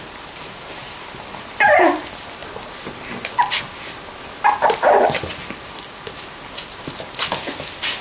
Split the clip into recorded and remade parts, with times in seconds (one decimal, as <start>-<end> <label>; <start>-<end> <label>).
0.0-8.0 recorded